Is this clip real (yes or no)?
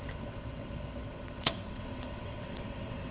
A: no